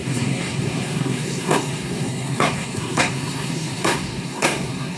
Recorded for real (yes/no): no